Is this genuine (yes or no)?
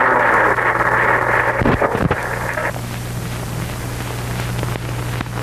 yes